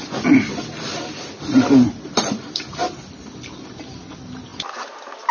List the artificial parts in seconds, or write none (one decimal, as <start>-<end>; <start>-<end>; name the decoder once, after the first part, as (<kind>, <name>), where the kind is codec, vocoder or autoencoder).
0.5-3.7 (vocoder, BigVGAN v2); 4.5-5.3